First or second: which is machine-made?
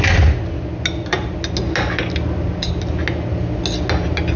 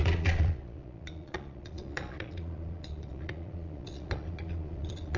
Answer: second